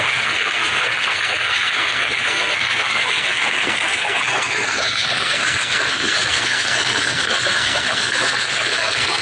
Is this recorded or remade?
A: remade